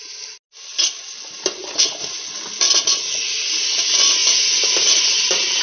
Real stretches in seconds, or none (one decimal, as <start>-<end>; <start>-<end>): 0.0-5.6